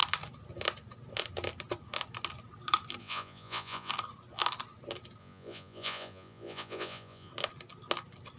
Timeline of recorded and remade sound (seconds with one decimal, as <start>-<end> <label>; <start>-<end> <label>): 0.0-3.0 recorded; 3.0-3.9 remade; 3.9-5.2 recorded; 5.2-7.3 remade; 7.3-8.4 recorded